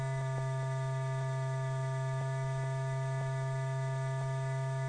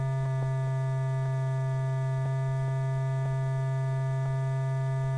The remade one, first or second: first